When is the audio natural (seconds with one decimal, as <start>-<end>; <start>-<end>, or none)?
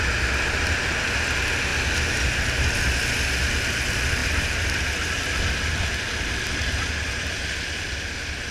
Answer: 0.0-8.5